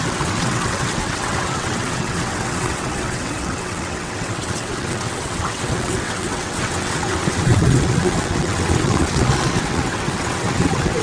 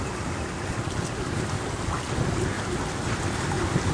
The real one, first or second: second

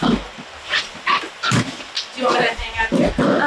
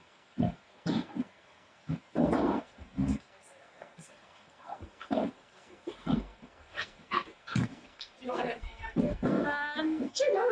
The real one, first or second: first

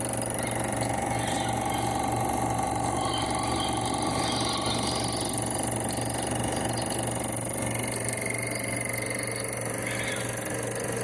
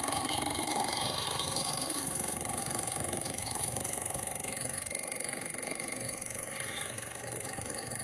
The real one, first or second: first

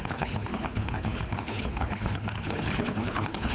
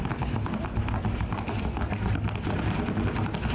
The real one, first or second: second